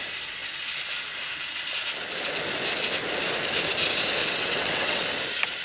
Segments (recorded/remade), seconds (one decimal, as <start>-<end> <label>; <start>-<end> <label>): 0.0-4.2 recorded; 4.2-5.0 remade; 5.0-5.6 recorded